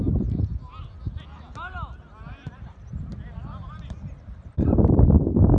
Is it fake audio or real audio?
real